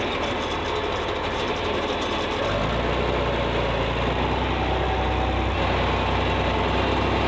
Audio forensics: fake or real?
real